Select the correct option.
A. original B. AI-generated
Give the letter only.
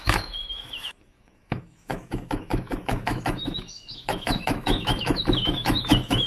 B